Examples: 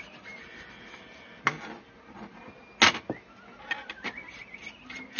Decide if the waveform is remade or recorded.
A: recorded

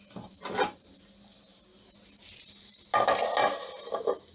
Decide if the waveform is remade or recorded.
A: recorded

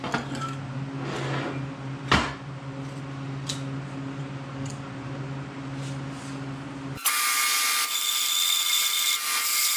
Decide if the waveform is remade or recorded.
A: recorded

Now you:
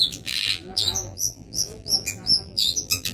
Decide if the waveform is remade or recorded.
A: remade